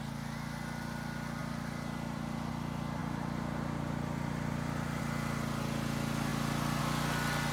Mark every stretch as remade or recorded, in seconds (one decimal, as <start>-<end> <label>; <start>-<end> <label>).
0.0-1.4 recorded; 1.4-2.5 remade; 2.5-3.0 recorded; 3.0-5.0 remade; 5.0-7.5 recorded